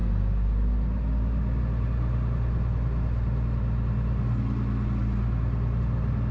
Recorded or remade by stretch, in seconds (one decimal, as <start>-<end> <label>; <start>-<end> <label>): 0.0-6.3 recorded